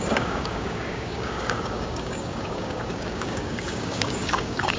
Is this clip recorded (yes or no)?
no